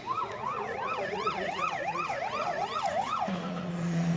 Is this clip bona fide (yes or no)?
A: no